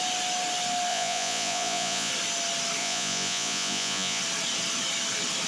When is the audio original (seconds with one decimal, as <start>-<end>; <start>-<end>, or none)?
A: 0.0-0.9; 2.1-2.8; 4.2-5.5